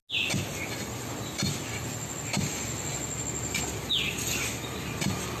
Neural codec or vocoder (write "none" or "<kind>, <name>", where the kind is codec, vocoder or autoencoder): none